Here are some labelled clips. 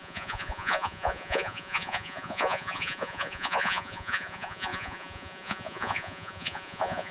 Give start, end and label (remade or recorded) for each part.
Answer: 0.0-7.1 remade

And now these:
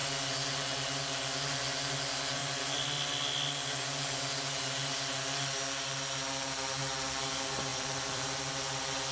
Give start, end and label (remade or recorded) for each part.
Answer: 0.0-2.4 recorded; 2.4-3.1 remade; 3.1-7.7 recorded; 7.7-8.5 remade; 8.5-9.1 recorded

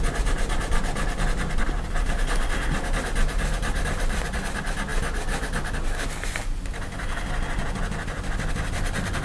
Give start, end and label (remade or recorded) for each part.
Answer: 0.0-9.2 recorded

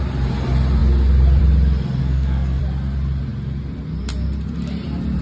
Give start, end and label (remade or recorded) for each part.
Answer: 0.0-2.0 recorded; 2.0-2.6 remade; 2.6-5.2 recorded